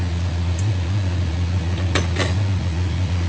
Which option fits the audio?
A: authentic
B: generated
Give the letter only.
B